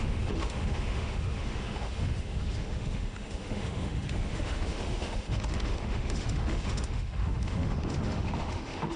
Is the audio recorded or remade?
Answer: remade